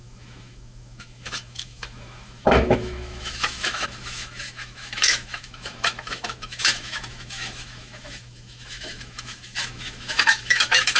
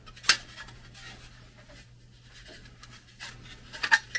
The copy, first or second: first